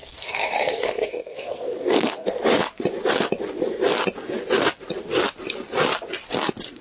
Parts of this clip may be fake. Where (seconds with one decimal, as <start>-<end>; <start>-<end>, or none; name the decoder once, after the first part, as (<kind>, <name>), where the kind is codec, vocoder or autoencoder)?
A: 0.0-2.3 (codec, SNAC)